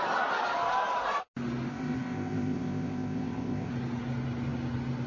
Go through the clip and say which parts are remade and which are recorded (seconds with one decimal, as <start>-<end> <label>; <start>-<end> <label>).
0.0-1.7 recorded; 1.7-3.7 remade; 3.7-5.1 recorded